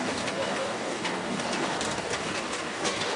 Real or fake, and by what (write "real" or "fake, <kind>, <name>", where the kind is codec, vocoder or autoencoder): fake, codec, DAC